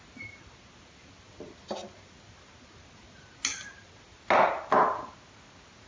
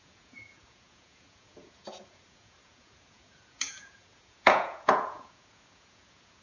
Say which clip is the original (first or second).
first